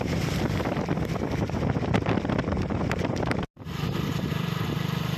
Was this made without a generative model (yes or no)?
yes